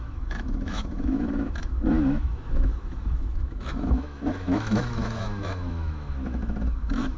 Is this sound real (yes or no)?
no